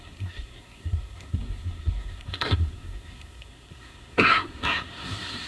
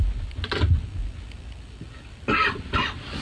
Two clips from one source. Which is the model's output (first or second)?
first